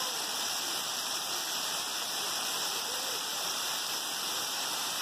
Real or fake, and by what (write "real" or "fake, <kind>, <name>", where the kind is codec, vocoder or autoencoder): fake, vocoder, BigVGAN v2